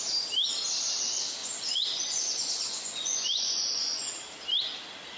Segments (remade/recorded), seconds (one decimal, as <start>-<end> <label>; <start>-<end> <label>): 0.0-1.4 recorded; 1.4-4.1 remade; 4.1-5.2 recorded

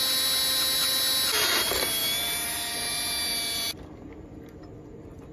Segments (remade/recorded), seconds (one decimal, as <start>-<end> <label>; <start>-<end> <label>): 0.0-5.3 recorded

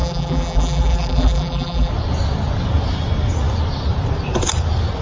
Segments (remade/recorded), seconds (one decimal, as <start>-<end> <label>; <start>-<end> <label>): 0.0-1.9 remade; 1.9-5.0 recorded

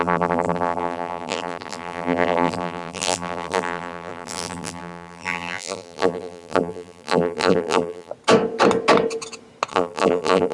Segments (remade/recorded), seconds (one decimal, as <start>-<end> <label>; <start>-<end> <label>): 0.0-8.1 remade; 8.1-9.7 recorded; 9.7-10.5 remade

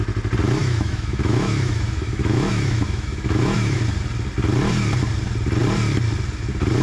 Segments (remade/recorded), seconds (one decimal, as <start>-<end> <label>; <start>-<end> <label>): 0.0-0.6 recorded; 0.6-3.8 remade; 3.8-6.8 recorded